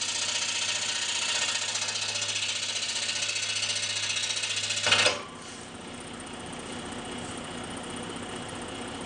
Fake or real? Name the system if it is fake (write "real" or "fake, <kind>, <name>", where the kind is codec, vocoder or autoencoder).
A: real